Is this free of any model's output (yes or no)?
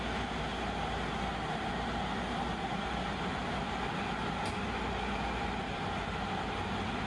yes